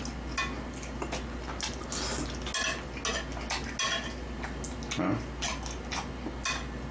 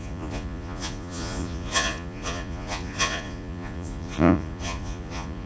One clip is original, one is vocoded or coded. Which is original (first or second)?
first